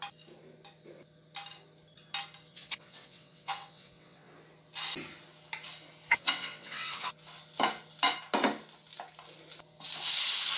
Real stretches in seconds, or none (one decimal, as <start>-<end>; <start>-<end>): 0.0-2.5; 4.3-6.1; 7.1-10.6